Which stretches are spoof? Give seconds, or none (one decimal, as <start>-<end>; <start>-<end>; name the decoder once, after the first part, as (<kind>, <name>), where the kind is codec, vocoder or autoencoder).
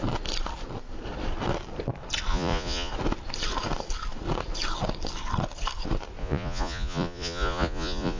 2.3-2.9 (vocoder, Vocos); 6.2-8.2